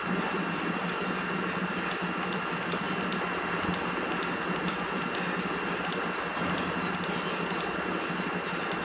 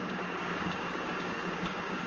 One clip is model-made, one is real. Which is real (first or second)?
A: first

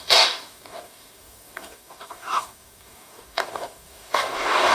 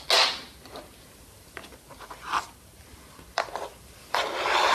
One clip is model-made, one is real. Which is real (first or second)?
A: second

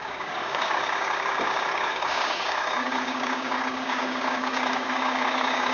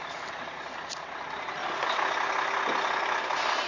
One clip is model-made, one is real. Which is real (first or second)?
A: second